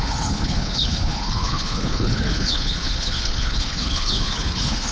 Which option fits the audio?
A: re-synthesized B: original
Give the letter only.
A